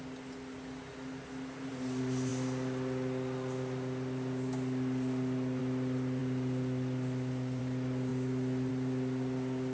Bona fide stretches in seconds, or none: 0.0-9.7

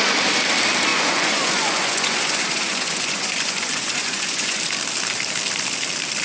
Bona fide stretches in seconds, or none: 0.0-0.9; 4.6-6.2

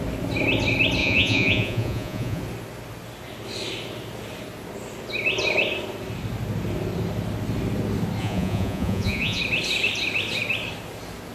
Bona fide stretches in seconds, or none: 0.0-1.0; 2.4-8.2; 9.4-11.3

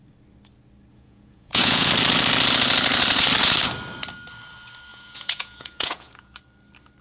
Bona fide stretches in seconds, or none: 0.0-0.9; 1.9-4.9; 6.4-7.0